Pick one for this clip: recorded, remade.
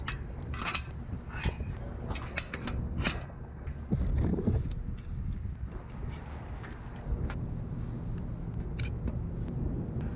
recorded